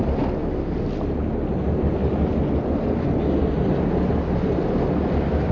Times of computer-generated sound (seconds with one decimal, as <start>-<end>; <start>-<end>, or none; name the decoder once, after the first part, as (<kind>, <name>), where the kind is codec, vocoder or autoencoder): none

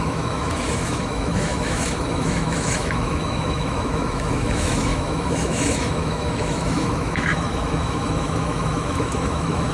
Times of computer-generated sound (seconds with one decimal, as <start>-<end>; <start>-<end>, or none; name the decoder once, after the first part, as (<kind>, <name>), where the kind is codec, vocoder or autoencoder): 0.0-9.7 (autoencoder, DAC-VAE)

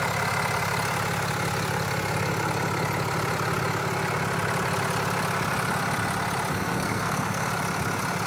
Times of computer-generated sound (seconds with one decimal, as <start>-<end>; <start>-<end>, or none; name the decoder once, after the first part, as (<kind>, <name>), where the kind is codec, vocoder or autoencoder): 6.5-7.5 (codec, SNAC)

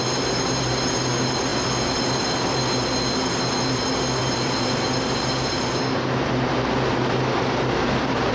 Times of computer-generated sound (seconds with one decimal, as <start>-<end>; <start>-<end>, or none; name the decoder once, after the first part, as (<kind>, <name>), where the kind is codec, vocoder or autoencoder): 4.2-6.5 (vocoder, BigVGAN v2)

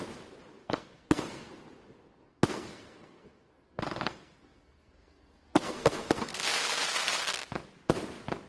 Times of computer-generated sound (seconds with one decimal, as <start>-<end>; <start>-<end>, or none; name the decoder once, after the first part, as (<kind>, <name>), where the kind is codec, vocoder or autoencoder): 0.6-1.5 (codec, SNAC); 2.3-7.4

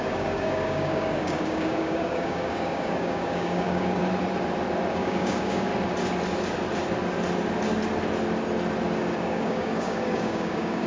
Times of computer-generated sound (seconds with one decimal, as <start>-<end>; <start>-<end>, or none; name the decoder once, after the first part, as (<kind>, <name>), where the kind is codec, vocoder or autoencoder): 0.0-4.0 (codec, DAC); 4.9-5.7; 9.2-10.9

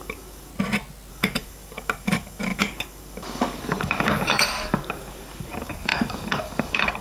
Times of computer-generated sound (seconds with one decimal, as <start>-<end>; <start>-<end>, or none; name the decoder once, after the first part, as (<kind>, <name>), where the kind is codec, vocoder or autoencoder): 0.0-0.5 (codec, DAC); 1.1-7.0